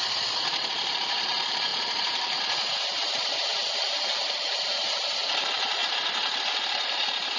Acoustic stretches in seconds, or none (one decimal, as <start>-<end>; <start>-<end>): 5.8-6.6